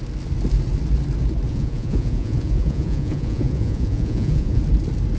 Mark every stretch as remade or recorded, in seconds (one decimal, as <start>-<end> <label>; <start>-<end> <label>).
0.0-1.5 recorded; 1.5-4.6 remade; 4.6-5.2 recorded